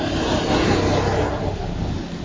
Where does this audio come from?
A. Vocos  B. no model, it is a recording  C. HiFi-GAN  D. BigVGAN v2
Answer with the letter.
B